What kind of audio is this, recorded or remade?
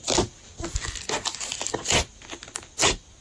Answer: recorded